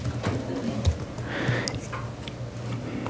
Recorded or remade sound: recorded